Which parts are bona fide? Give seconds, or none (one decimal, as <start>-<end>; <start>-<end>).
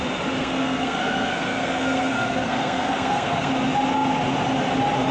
0.0-0.4; 3.5-5.1